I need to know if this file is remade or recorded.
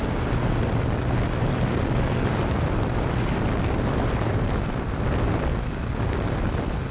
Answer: remade